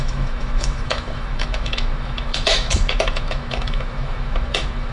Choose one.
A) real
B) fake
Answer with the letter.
B